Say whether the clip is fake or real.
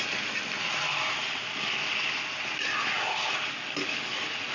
real